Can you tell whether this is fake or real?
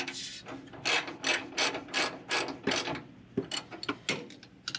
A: real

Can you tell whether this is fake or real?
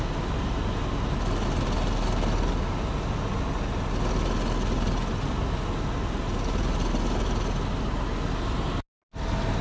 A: real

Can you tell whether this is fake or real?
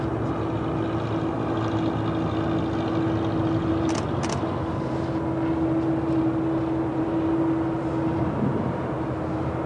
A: real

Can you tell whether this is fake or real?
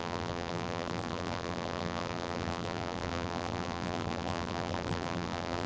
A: fake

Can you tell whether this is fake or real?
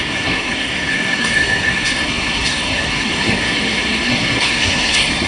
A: fake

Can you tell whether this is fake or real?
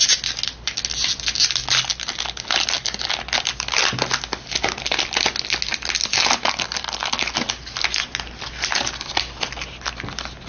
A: real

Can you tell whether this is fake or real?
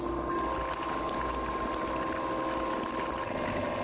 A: real